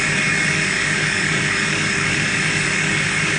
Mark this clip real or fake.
fake